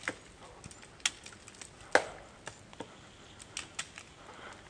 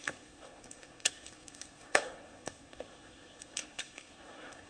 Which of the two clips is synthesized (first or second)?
second